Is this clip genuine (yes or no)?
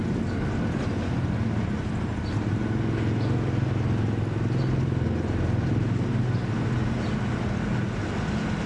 yes